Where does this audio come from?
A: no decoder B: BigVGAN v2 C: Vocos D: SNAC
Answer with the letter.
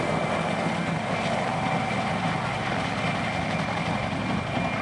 A